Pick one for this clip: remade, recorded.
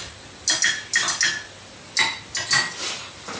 recorded